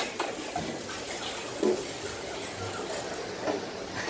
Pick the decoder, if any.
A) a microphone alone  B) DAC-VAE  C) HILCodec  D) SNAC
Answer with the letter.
A